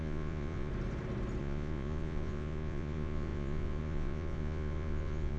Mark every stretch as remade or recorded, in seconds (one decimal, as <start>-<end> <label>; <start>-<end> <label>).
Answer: 0.0-0.7 remade; 0.7-1.4 recorded; 1.4-5.4 remade